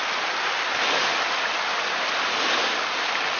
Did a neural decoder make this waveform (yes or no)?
no